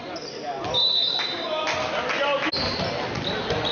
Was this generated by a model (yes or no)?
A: no